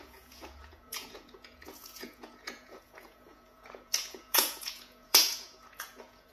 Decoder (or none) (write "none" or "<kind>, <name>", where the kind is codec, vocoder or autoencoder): vocoder, Vocos